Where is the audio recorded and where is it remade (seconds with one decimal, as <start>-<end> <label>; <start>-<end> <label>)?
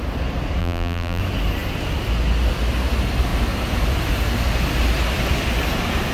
0.0-0.6 recorded; 0.6-1.2 remade; 1.2-6.1 recorded